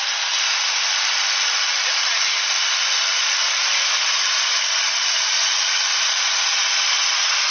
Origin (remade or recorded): recorded